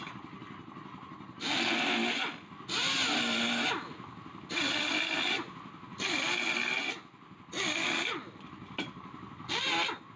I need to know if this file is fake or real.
real